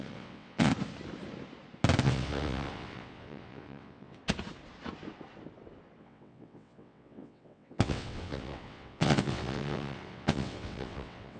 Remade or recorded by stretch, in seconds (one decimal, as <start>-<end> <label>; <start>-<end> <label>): 0.0-0.7 remade; 0.7-2.0 recorded; 2.0-4.2 remade; 4.2-6.0 recorded; 6.0-11.4 remade